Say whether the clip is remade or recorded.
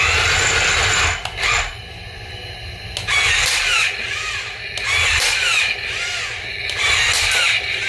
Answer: recorded